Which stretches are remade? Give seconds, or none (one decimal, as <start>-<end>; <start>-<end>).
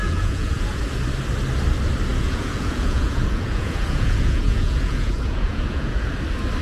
0.0-0.8; 2.1-6.1